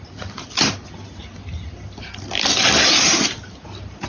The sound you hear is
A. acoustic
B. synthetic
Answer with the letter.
A